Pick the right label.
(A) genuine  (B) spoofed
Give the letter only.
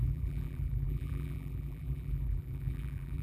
B